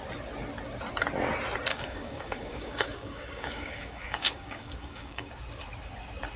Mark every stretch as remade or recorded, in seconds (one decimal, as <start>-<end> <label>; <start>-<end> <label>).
0.0-1.7 recorded; 1.7-5.3 remade; 5.3-6.4 recorded